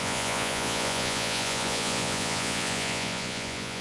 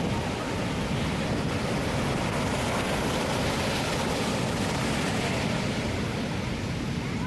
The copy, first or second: first